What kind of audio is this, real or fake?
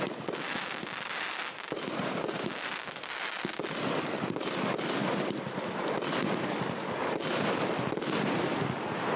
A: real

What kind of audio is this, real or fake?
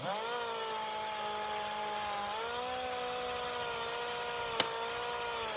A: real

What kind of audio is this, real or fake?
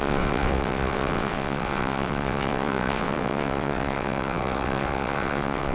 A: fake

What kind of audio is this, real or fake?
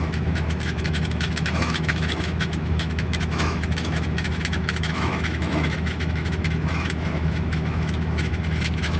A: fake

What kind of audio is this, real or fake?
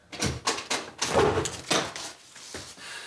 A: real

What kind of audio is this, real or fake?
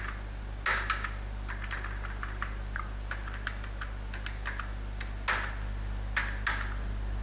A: real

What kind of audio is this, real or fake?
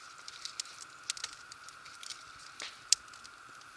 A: real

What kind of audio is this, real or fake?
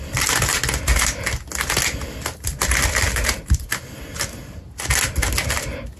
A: real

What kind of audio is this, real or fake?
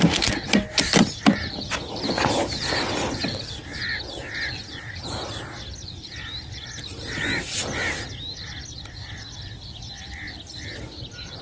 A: real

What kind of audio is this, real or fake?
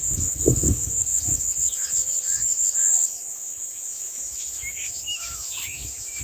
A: fake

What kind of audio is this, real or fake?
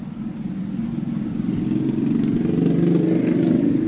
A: real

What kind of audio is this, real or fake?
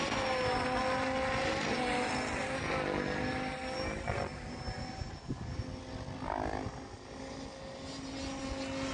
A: real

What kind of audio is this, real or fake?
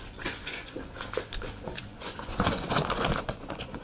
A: fake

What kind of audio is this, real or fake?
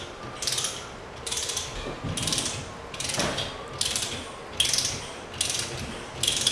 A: real